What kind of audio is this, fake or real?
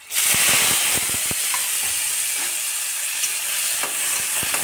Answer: real